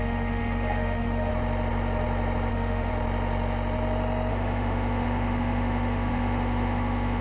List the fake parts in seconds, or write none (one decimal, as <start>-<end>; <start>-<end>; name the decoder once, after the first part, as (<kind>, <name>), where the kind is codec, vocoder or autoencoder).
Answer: 0.0-1.3 (autoencoder, DAC-VAE); 2.5-2.9; 4.3-7.2